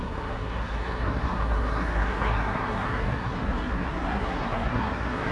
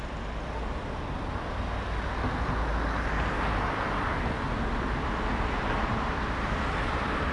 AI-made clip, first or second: first